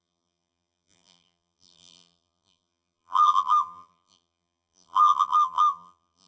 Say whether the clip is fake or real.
fake